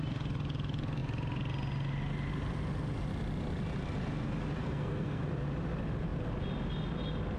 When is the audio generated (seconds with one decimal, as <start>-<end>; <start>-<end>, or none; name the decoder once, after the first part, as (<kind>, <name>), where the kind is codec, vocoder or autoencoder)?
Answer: 4.6-5.2 (codec, SNAC)